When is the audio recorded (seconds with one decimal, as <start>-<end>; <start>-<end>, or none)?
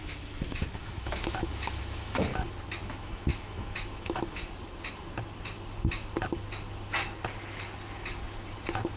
2.3-2.9; 4.4-9.0